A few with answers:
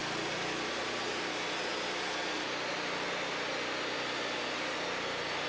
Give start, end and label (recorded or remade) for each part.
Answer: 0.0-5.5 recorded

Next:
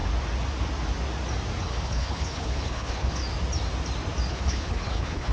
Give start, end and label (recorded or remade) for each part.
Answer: 0.0-1.6 recorded; 1.6-3.2 remade; 3.2-4.3 recorded; 4.3-5.3 remade

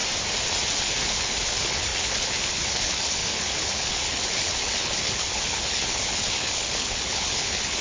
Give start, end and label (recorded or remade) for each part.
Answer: 0.0-0.8 recorded; 0.8-7.8 remade

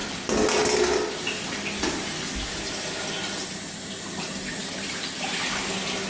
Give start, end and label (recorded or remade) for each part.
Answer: 0.0-6.1 recorded

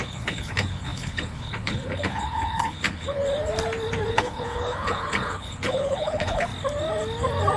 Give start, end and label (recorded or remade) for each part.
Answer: 0.0-3.2 remade; 3.2-4.1 recorded; 4.1-6.5 remade; 6.5-7.6 recorded

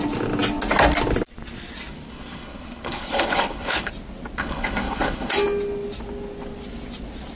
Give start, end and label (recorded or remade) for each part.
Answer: 0.0-2.1 recorded; 2.1-3.9 remade; 3.9-4.4 recorded; 4.4-5.3 remade; 5.3-7.4 recorded

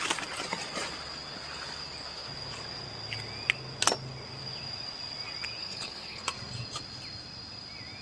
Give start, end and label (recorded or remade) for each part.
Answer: 0.0-5.6 recorded; 5.6-6.2 remade; 6.2-8.0 recorded